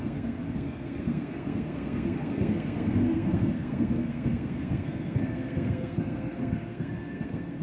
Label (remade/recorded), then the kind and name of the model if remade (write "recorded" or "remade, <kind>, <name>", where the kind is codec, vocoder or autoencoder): remade, codec, SNAC